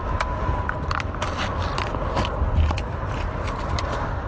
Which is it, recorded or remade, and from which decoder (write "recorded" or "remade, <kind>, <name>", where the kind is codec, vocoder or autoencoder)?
recorded